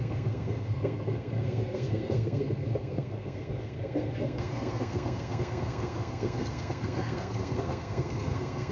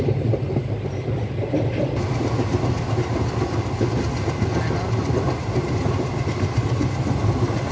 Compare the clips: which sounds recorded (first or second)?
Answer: second